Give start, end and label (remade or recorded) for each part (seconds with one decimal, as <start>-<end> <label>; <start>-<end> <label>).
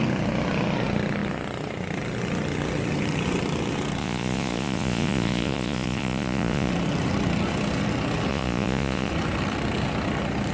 0.0-4.0 recorded; 4.0-6.7 remade; 6.7-8.3 recorded; 8.3-9.1 remade; 9.1-10.5 recorded